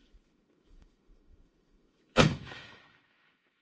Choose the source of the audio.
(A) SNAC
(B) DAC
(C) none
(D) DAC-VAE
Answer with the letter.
D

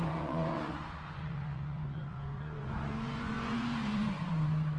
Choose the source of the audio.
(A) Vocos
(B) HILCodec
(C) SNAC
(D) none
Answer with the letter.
A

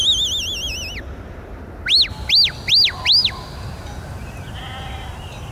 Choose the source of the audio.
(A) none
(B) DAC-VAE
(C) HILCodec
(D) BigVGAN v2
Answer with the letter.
A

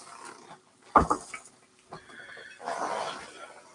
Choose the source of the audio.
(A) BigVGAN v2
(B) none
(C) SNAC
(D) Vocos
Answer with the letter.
B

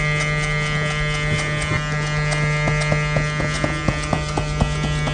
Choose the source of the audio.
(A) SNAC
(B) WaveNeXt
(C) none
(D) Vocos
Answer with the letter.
C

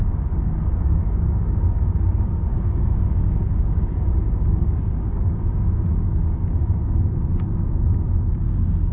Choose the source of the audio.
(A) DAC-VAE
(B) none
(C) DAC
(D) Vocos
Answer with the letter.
C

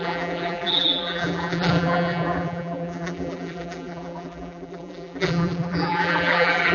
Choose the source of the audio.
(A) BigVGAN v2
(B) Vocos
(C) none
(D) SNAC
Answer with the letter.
A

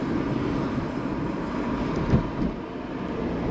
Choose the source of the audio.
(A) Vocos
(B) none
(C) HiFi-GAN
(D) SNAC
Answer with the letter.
B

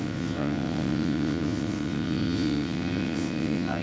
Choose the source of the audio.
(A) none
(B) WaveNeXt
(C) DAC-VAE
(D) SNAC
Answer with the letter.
B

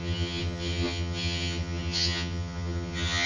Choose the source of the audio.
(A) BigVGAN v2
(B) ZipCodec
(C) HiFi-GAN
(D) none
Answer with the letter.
C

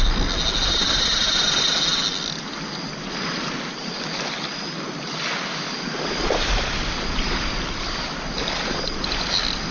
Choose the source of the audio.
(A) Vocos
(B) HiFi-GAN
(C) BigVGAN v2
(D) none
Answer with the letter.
D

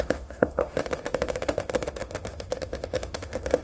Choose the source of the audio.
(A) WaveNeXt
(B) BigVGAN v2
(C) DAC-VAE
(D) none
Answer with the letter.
C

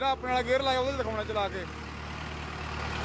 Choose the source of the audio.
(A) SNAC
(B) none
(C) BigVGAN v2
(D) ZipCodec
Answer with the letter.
B